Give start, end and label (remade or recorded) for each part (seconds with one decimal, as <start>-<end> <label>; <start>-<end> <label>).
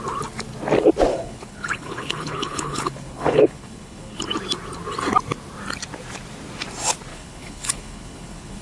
0.0-1.1 recorded; 1.1-4.2 remade; 4.2-7.1 recorded; 7.1-8.6 remade